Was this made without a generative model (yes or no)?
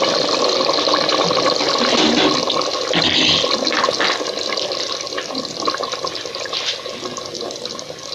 yes